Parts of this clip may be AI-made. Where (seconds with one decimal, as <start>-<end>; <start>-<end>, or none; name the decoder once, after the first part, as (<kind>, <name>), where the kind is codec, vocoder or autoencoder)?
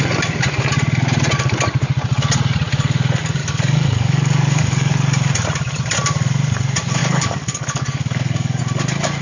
3.4-4.9 (codec, DAC); 7.0-8.6